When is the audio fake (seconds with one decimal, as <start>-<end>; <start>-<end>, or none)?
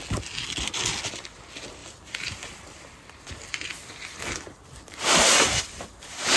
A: 1.8-5.6